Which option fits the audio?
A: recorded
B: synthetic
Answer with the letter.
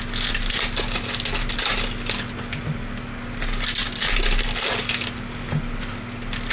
A